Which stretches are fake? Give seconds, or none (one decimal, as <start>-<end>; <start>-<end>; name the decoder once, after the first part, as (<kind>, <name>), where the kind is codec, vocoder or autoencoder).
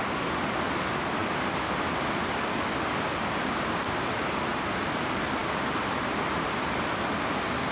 none